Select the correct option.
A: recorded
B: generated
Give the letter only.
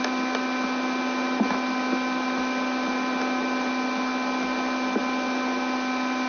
A